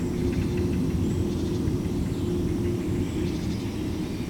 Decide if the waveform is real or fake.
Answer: real